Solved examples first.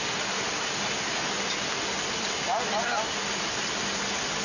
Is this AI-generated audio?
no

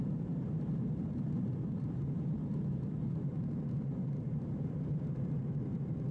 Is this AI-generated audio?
yes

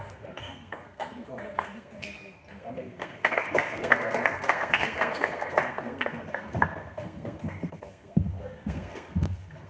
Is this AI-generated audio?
yes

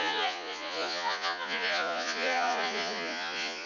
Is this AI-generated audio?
yes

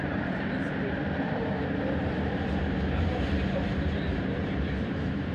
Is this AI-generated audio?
yes